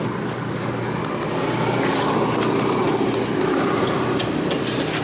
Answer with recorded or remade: recorded